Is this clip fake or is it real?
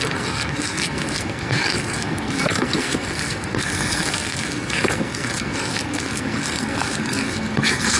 fake